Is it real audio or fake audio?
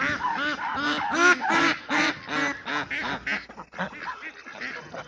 real